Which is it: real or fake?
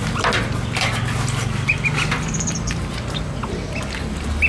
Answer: real